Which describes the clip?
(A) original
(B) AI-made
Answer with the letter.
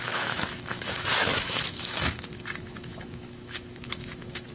B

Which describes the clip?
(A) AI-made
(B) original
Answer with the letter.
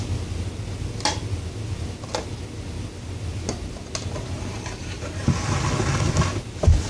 B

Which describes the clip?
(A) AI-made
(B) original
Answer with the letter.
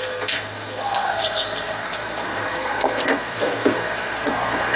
A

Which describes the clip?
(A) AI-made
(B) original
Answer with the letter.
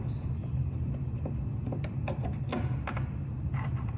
B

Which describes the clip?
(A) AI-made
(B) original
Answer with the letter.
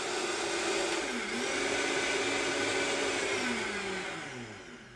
B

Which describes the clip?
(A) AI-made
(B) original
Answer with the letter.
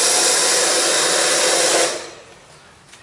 B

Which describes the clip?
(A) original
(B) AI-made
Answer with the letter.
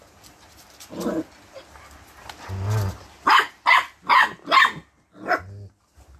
A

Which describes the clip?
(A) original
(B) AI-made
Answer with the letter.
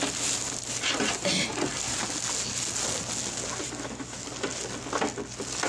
A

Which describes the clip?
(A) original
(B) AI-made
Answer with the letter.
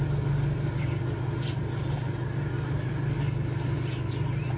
A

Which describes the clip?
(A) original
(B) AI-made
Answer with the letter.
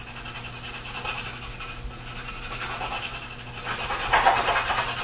A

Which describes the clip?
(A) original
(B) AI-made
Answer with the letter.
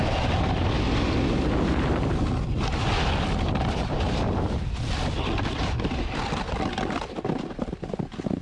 A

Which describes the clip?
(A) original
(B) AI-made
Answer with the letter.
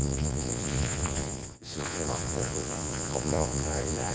B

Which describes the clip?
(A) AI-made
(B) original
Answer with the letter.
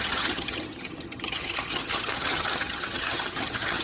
A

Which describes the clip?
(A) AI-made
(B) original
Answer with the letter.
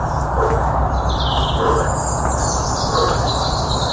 B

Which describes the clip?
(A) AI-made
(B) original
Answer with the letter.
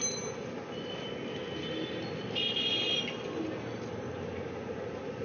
B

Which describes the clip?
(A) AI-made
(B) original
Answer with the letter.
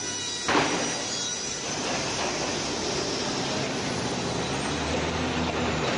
B